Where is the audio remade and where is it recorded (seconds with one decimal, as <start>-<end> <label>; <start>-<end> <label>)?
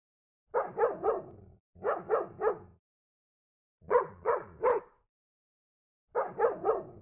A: 0.0-3.4 recorded; 3.4-4.6 remade; 4.6-7.0 recorded